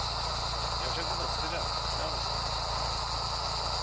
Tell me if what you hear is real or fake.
real